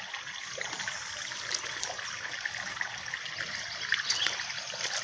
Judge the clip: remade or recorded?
recorded